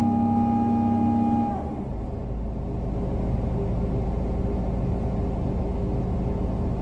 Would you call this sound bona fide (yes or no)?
yes